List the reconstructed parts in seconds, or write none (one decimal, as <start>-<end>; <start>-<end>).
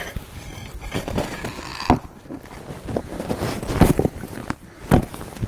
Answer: none